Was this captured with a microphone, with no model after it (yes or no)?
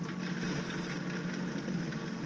yes